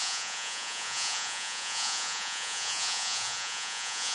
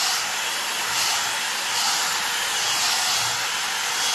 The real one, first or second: second